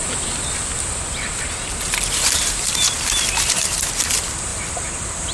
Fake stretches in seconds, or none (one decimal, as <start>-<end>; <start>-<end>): none